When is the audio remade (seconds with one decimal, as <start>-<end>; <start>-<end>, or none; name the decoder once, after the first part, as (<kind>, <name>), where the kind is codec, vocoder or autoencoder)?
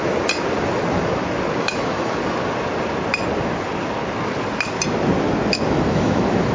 1.6-2.2 (autoencoder, DAC-VAE); 5.7-6.5